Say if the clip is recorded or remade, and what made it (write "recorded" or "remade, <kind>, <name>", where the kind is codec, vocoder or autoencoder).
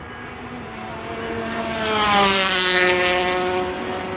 remade, vocoder, BigVGAN v2